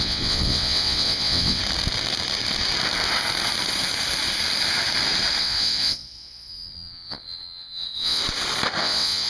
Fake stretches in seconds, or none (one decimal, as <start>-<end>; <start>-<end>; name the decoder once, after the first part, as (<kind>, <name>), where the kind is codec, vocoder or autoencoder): 0.0-1.6 (vocoder, WaveNeXt); 5.4-8.2; 8.8-9.3